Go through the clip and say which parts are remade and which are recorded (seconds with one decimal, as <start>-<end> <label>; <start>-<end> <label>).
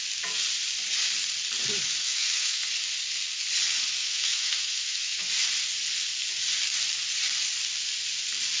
0.0-2.0 recorded; 2.0-2.6 remade; 2.6-4.0 recorded; 4.0-5.3 remade; 5.3-8.6 recorded